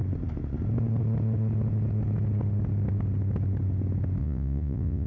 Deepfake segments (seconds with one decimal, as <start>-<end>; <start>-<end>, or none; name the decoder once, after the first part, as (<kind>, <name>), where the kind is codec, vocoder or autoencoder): 4.2-5.1 (vocoder, Vocos)